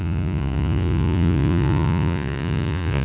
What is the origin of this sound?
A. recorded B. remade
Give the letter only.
B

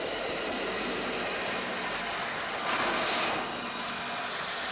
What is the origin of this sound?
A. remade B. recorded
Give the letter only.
B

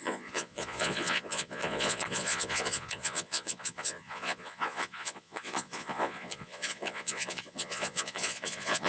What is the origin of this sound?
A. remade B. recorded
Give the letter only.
A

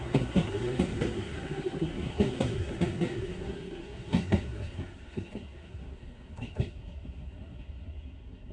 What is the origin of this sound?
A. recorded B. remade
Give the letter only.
B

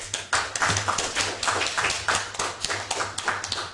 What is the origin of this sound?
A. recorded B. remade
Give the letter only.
A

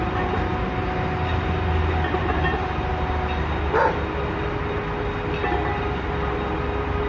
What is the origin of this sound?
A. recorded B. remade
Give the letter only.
A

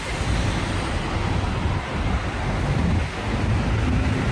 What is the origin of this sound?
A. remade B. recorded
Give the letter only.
B